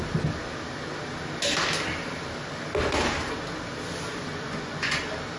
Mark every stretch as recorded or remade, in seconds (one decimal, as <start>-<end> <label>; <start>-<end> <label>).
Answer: 0.0-4.1 recorded; 4.1-5.0 remade; 5.0-5.4 recorded